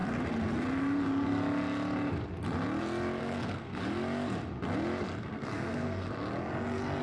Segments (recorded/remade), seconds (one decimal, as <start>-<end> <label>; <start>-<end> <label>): 0.0-3.2 recorded; 3.2-3.8 remade; 3.8-5.2 recorded; 5.2-6.1 remade; 6.1-7.0 recorded